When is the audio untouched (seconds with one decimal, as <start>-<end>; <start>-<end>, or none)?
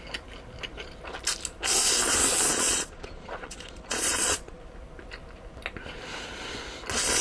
0.0-2.2; 4.6-7.2